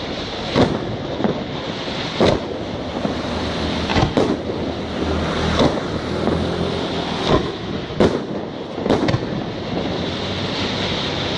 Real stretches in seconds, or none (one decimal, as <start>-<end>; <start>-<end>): 0.0-11.4